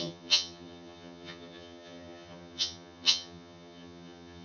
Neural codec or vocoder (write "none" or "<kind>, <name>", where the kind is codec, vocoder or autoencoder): vocoder, HiFi-GAN